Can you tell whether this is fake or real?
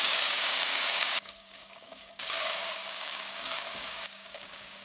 fake